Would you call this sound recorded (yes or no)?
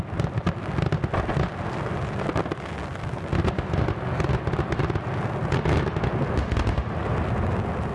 yes